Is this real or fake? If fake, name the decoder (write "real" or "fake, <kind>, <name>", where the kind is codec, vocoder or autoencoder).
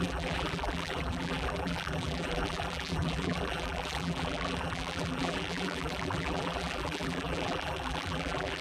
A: fake, vocoder, BigVGAN v2